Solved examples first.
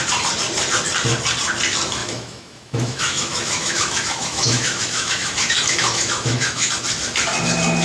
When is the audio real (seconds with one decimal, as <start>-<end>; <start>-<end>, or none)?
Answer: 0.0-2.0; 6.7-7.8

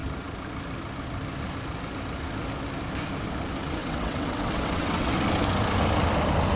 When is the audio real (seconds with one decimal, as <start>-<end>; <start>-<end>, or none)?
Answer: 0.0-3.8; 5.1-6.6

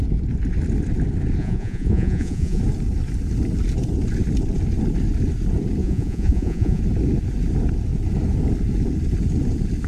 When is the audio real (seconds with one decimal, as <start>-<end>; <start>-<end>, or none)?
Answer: 0.0-1.4; 2.6-5.8; 6.8-9.9

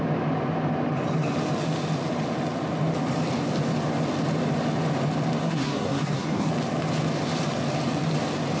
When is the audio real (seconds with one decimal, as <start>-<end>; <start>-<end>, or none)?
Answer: 0.0-5.4; 6.5-8.6

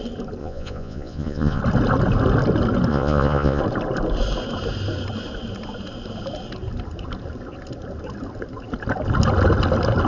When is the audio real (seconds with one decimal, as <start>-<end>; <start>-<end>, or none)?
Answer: 0.0-0.4; 1.6-2.9; 3.6-10.1

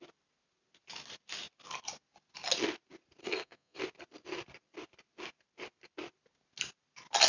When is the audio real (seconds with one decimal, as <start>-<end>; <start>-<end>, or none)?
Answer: 0.0-3.2; 3.8-7.3

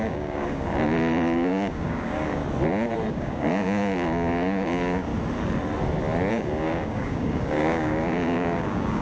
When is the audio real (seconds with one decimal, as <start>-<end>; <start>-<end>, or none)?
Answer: 2.4-3.1; 5.1-6.3

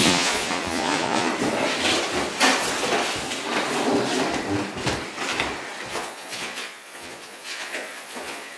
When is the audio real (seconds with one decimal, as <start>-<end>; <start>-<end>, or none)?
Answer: 1.3-5.9